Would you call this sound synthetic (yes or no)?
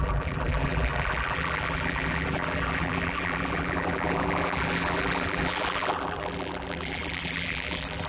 yes